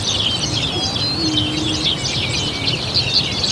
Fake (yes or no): no